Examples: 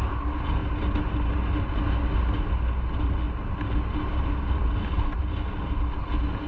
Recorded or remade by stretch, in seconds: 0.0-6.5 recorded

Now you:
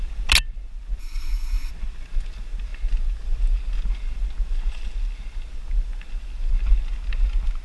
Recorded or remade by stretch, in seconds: 0.0-1.0 recorded; 1.0-1.7 remade; 1.7-7.6 recorded

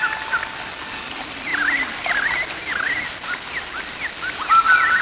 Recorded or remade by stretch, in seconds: 0.0-5.0 recorded

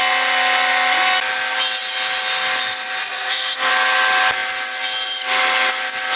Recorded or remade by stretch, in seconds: 0.0-3.0 recorded; 3.0-3.7 remade; 3.7-6.2 recorded